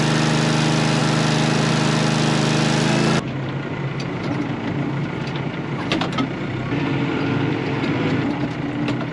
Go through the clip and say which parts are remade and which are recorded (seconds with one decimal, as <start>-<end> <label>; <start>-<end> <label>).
0.0-5.0 recorded; 5.0-8.7 remade; 8.7-9.1 recorded